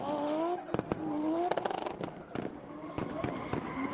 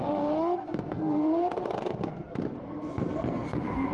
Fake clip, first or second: second